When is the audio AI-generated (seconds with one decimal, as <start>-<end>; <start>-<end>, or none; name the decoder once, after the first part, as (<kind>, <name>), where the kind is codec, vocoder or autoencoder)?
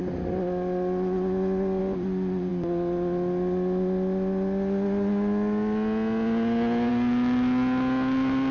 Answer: none